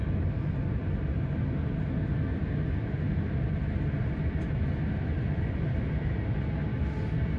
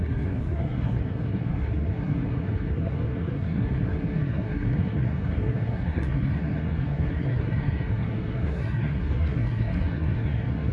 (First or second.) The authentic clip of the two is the first